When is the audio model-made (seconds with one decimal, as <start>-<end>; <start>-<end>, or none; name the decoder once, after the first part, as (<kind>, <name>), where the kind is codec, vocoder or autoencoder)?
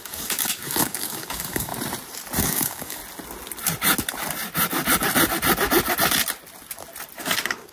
0.0-1.7 (codec, DAC); 2.4-3.0; 7.2-7.7